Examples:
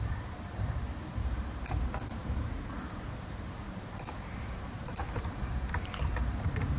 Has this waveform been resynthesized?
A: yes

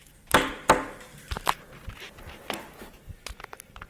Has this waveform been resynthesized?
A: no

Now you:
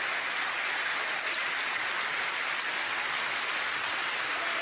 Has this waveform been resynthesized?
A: no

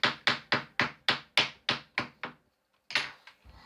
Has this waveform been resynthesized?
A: no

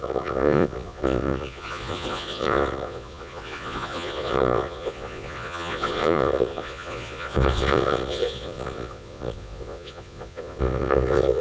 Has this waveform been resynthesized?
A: yes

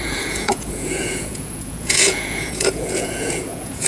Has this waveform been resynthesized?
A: yes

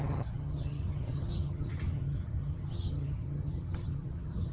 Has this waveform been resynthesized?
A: yes